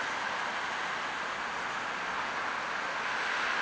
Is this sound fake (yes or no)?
no